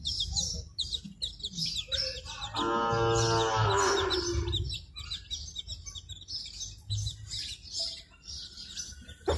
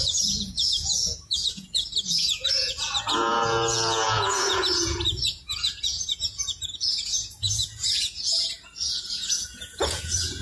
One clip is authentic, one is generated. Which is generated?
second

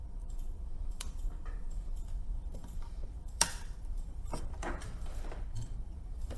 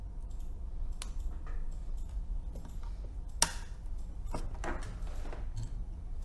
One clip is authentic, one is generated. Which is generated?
first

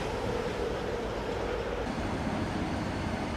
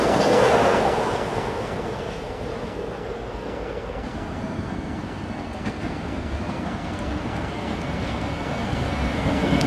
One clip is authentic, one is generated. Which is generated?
second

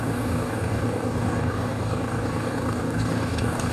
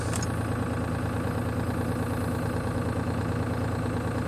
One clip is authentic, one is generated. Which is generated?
first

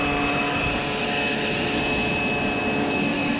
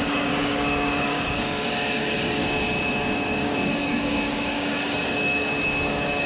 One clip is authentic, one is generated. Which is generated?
second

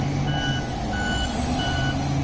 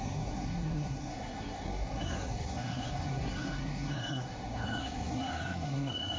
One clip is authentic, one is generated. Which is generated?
second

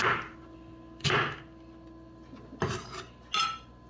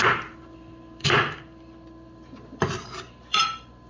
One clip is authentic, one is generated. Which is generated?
second